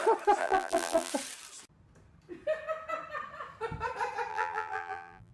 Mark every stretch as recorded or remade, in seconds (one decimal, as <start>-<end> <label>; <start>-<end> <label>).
0.0-0.4 recorded; 0.4-1.1 remade; 1.1-4.3 recorded; 4.3-5.3 remade